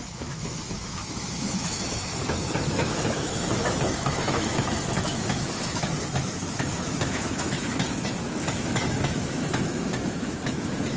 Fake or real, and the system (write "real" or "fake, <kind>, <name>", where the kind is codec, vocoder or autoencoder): fake, autoencoder, DAC-VAE